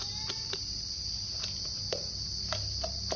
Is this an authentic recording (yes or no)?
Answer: yes